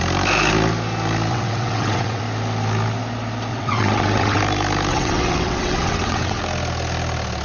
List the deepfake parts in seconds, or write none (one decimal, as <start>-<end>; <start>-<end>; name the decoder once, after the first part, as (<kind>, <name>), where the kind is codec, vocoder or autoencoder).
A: 1.3-2.2 (vocoder, WaveNeXt); 3.5-4.4; 4.9-6.4